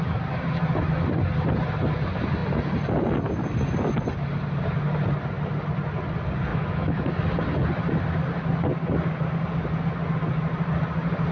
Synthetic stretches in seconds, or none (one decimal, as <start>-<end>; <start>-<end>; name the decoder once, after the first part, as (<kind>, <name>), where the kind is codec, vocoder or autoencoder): 6.5-7.1 (autoencoder, DAC-VAE)